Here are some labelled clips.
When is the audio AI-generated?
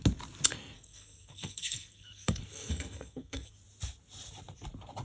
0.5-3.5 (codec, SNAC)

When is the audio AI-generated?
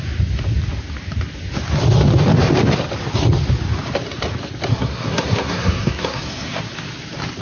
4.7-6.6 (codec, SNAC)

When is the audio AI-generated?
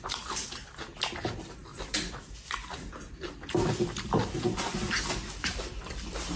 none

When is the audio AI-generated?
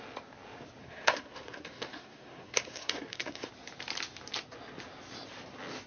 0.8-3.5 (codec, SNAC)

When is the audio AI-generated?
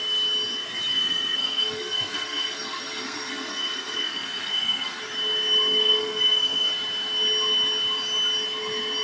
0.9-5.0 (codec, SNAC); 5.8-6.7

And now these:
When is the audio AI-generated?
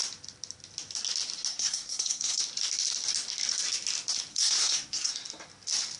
1.5-2.4 (codec, SNAC); 4.3-5.1